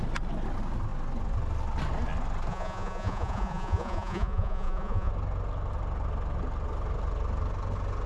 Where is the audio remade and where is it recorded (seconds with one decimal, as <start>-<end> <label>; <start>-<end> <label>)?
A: 0.0-2.5 recorded; 2.5-5.1 remade; 5.1-8.1 recorded